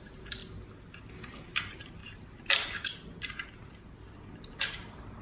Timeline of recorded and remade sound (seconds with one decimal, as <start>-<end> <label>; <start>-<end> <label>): 0.0-5.2 recorded